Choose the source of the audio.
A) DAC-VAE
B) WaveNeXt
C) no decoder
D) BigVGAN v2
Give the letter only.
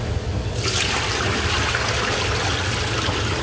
C